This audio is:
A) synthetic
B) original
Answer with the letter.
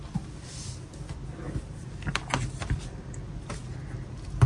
B